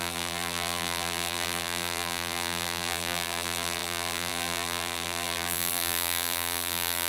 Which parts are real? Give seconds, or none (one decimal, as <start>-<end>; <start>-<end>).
none